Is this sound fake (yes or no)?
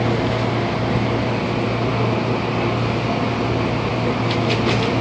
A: no